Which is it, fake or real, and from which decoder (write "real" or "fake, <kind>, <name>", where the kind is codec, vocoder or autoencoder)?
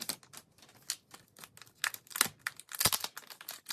real